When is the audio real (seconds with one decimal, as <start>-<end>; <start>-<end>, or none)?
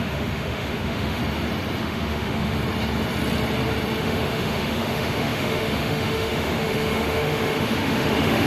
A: 1.2-1.8; 2.6-4.0